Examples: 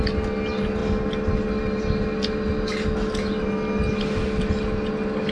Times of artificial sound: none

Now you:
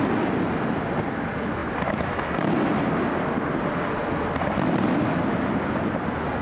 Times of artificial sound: none

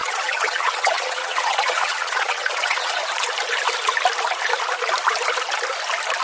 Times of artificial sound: 0.0-3.0